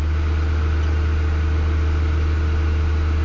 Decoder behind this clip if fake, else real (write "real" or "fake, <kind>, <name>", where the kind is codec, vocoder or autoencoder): real